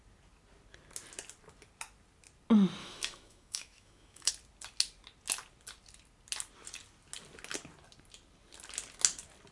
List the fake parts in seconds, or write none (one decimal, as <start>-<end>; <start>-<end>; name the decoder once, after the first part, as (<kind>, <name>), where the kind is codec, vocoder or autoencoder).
2.8-4.3 (autoencoder, DAC-VAE)